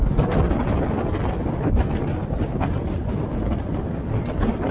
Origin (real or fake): real